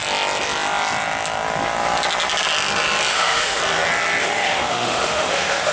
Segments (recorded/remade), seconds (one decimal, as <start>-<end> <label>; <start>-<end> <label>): 0.0-3.1 recorded; 3.1-3.6 remade; 3.6-4.2 recorded; 4.2-5.7 remade